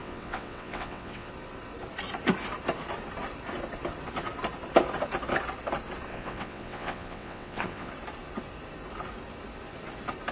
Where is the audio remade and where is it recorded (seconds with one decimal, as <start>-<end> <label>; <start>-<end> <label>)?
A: 0.0-1.3 remade; 1.3-6.1 recorded; 6.1-7.9 remade; 7.9-10.3 recorded